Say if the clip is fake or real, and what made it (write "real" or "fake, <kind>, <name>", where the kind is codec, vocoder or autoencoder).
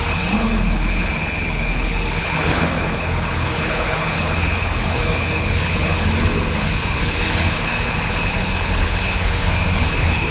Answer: fake, codec, HILCodec